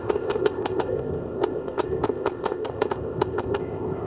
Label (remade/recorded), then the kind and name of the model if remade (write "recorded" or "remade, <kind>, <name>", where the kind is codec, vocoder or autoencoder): remade, codec, ZipCodec